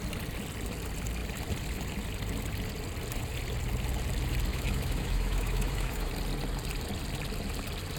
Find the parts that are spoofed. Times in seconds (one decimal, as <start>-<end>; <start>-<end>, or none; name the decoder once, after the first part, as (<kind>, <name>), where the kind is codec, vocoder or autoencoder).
4.5-6.1 (autoencoder, DAC-VAE)